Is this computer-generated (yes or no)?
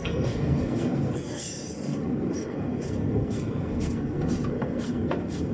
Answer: yes